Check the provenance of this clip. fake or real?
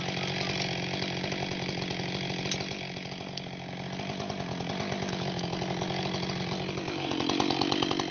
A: real